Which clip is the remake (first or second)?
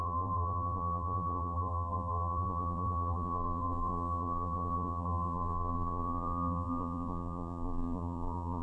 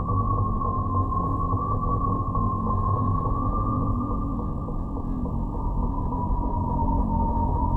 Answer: first